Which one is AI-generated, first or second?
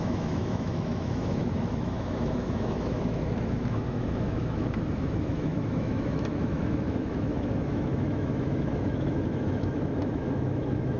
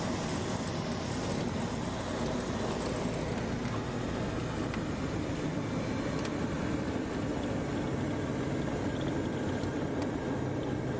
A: first